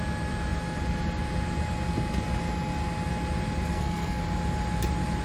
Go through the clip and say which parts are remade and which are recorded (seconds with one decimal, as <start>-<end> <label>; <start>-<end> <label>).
0.0-3.7 recorded; 3.7-4.2 remade; 4.2-5.2 recorded